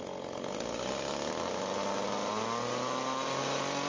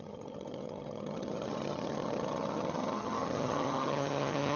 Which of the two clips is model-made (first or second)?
second